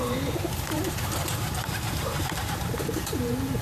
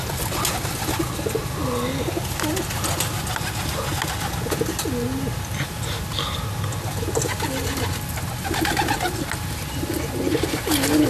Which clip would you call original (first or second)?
second